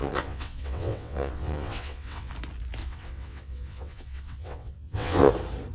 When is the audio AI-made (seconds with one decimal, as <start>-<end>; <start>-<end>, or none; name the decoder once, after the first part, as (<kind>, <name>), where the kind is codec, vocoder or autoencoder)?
0.0-2.3 (vocoder, WaveNeXt); 2.8-5.3